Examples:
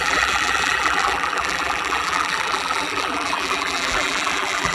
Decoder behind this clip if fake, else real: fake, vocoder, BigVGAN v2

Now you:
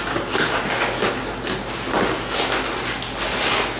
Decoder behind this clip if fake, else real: real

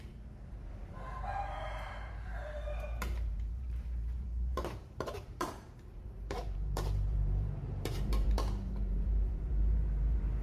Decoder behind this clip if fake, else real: fake, vocoder, BigVGAN v2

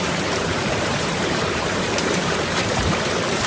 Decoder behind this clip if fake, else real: fake, vocoder, BigVGAN v2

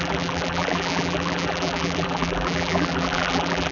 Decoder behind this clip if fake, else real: fake, vocoder, BigVGAN v2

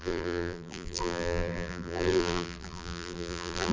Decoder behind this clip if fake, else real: fake, vocoder, BigVGAN v2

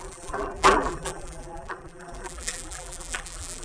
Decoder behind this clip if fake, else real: fake, vocoder, BigVGAN v2